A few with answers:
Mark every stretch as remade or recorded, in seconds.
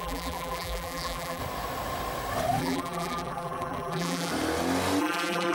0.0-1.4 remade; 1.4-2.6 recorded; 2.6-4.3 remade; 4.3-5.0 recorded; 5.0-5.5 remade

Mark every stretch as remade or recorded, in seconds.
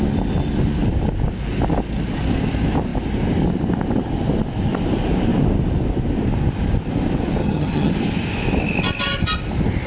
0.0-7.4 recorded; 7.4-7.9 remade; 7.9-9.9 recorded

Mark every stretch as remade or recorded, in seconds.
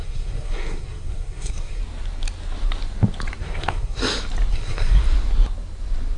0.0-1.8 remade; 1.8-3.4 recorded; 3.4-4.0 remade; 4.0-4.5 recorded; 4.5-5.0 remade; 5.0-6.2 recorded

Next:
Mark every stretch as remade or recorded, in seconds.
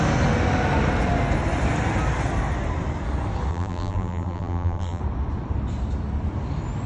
0.0-3.5 recorded; 3.5-5.0 remade; 5.0-6.9 recorded